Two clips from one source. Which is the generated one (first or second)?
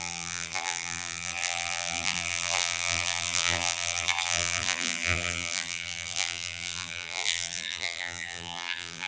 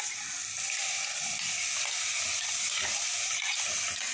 first